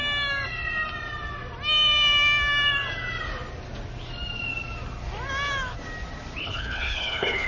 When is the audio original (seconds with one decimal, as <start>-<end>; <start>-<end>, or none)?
0.0-6.4